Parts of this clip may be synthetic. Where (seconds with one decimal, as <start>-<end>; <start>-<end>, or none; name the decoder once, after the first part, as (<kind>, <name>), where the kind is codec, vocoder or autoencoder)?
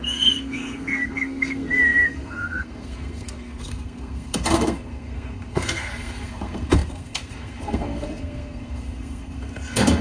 0.0-10.0 (codec, SNAC)